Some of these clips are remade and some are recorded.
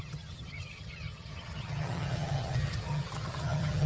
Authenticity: remade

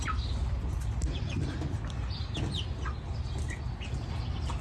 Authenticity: recorded